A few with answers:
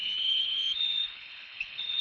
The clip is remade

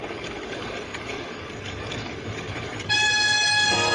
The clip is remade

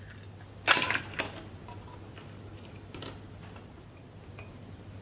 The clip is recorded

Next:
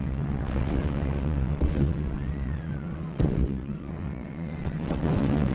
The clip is remade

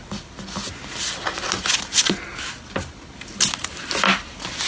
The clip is recorded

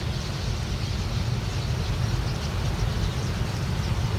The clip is recorded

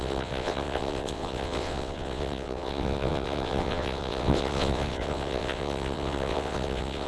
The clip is remade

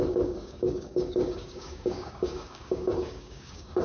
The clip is remade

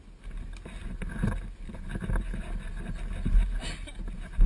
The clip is recorded